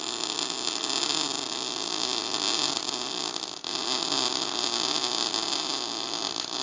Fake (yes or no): no